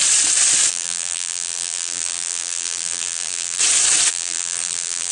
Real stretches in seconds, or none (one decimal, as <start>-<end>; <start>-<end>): 0.0-0.7; 3.6-4.1